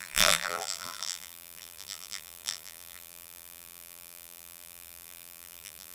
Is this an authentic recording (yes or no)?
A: no